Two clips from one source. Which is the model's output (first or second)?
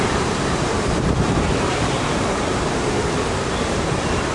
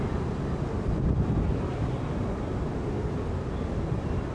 first